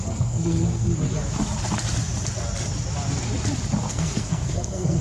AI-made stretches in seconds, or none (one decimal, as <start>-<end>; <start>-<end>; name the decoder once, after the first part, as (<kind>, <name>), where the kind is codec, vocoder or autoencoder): 0.0-0.9 (codec, SNAC); 3.9-5.0